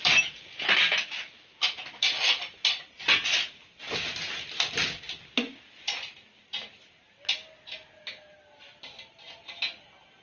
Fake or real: real